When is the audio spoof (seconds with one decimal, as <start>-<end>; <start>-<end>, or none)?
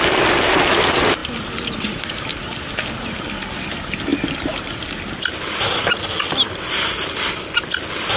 1.2-2.4; 4.1-6.0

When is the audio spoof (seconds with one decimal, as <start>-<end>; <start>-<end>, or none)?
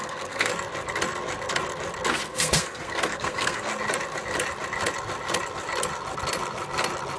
0.0-0.5; 2.1-3.7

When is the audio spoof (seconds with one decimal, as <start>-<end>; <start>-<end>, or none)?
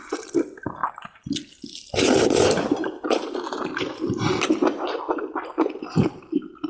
none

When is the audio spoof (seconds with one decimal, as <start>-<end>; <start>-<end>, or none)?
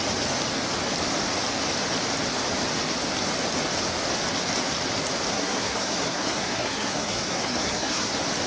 5.3-8.1